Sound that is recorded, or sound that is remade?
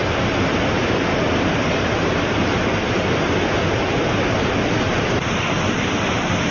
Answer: recorded